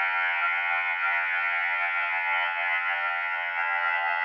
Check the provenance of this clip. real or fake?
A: fake